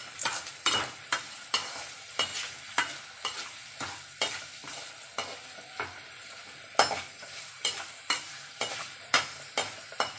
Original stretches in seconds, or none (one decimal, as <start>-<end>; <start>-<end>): 2.3-7.1